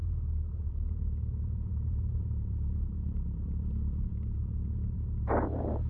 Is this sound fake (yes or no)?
yes